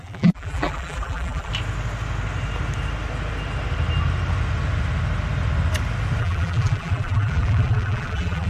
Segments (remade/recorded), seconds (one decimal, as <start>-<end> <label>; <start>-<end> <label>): 0.0-1.5 remade; 1.5-6.2 recorded; 6.2-8.5 remade